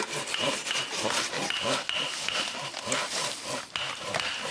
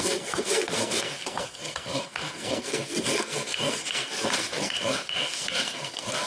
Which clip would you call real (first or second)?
first